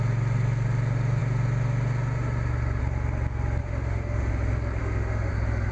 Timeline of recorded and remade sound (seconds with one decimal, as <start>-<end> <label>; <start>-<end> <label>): 0.0-3.6 recorded; 3.6-4.3 remade; 4.3-4.8 recorded; 4.8-5.3 remade; 5.3-5.7 recorded